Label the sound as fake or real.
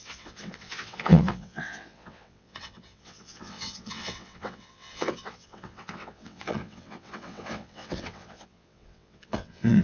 fake